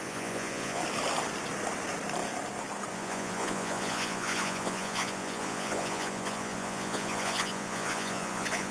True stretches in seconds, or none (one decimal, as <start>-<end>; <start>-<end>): 0.8-2.9